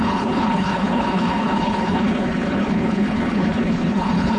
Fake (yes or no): yes